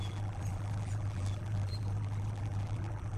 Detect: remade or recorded remade